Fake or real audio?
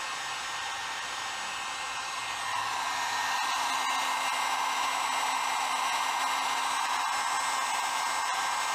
real